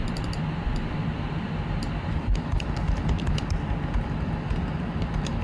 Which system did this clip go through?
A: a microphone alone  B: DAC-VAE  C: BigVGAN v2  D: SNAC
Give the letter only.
C